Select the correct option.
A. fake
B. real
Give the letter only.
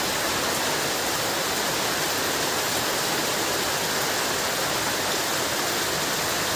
B